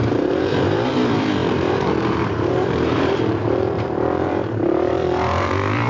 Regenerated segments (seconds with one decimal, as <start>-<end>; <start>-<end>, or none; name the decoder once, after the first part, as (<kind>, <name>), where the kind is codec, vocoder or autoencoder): 0.0-5.9 (vocoder, BigVGAN v2)